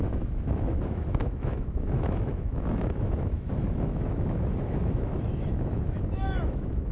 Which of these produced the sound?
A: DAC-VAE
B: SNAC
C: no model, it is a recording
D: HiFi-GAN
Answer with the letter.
A